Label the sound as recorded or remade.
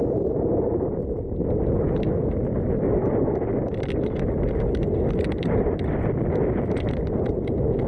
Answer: recorded